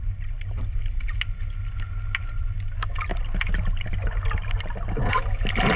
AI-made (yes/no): no